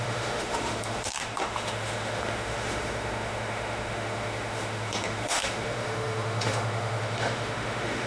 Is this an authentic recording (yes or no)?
no